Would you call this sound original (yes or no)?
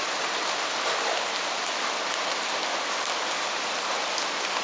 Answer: yes